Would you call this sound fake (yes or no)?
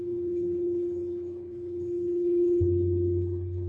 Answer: yes